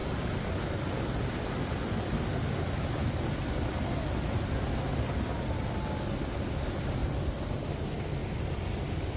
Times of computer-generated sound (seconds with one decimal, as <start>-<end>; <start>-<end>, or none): none